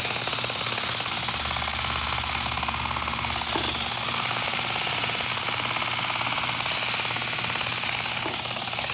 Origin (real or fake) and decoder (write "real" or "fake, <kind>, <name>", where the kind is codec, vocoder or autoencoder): real